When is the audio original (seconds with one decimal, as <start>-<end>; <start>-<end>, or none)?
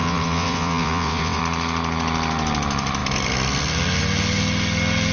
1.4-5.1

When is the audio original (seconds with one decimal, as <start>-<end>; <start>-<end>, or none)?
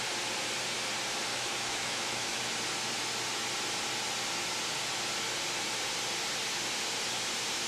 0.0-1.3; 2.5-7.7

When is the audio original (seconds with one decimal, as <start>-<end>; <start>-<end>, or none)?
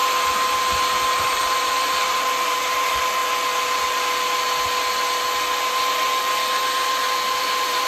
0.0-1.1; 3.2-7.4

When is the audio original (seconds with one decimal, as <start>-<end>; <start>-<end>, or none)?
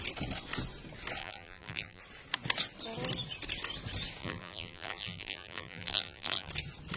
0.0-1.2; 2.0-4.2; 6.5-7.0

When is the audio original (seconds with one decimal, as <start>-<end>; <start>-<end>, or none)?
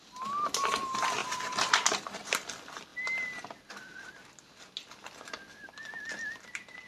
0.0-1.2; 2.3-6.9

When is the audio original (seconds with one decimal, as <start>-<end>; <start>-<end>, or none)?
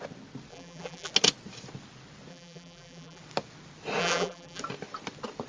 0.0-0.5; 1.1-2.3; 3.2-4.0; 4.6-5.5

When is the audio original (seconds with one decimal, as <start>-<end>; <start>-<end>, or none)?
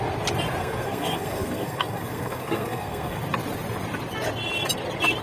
0.0-0.6; 3.2-5.2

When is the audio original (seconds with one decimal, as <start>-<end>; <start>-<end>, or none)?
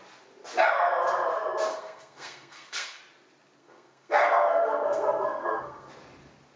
0.0-1.7; 3.0-3.6; 5.9-6.6